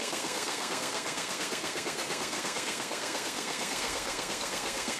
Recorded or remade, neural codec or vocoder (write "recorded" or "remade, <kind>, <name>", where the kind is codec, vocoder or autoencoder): remade, codec, SNAC